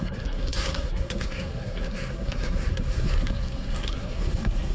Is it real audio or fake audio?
fake